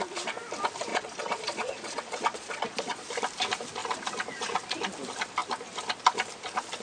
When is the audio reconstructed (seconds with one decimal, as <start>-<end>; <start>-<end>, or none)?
0.9-3.1